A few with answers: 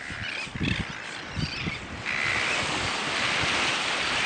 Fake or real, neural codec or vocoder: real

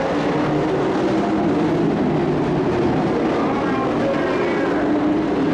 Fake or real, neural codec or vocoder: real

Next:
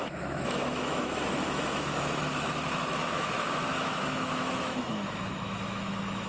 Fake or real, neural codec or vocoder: fake, autoencoder, DAC-VAE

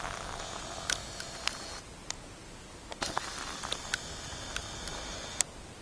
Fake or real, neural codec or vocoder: real